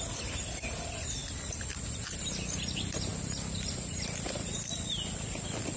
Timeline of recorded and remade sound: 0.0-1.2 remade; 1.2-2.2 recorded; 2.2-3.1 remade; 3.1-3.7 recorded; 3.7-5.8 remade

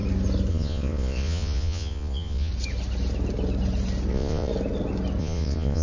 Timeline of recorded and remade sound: 0.0-0.5 recorded; 0.5-2.5 remade; 2.5-4.1 recorded; 4.1-4.5 remade; 4.5-5.2 recorded; 5.2-5.8 remade

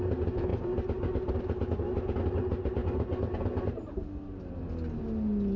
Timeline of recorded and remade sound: 0.0-5.6 recorded

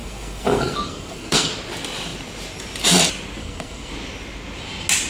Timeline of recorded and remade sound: 0.0-1.5 remade; 1.5-3.4 recorded; 3.4-3.9 remade; 3.9-5.1 recorded

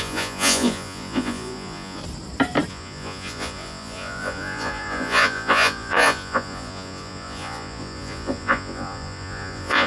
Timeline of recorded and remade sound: 0.0-2.0 remade; 2.0-2.7 recorded; 2.7-9.9 remade

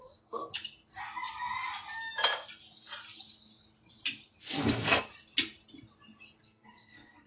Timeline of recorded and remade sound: 0.0-0.4 remade; 0.4-4.4 recorded; 4.4-5.1 remade; 5.1-6.4 recorded; 6.4-7.3 remade

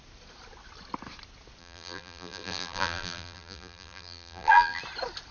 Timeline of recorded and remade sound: 0.0-1.6 recorded; 1.6-4.8 remade; 4.8-5.3 recorded

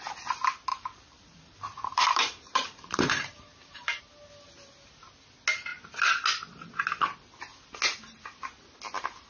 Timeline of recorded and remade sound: 0.0-0.7 recorded; 0.7-4.0 remade; 4.0-9.3 recorded